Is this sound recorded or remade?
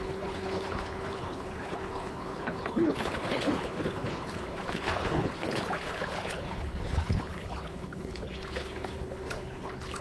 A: remade